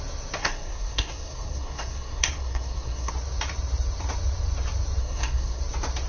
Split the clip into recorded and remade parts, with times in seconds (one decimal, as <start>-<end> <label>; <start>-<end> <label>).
0.0-0.4 recorded; 0.4-3.1 remade; 3.1-5.0 recorded; 5.0-5.6 remade; 5.6-6.1 recorded